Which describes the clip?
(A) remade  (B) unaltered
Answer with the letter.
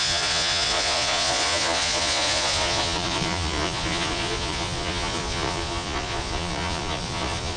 A